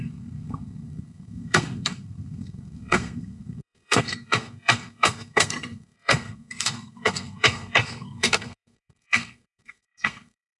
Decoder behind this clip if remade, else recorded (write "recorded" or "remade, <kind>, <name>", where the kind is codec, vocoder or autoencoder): remade, codec, SNAC